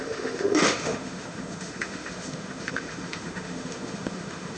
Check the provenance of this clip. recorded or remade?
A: remade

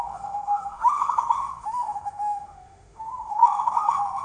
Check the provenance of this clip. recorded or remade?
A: remade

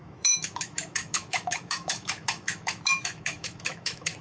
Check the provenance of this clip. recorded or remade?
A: remade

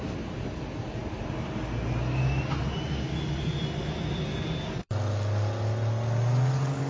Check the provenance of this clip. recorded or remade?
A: recorded